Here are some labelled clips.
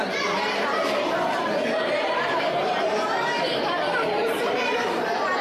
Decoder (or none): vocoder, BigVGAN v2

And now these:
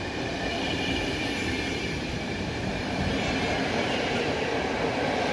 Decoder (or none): vocoder, BigVGAN v2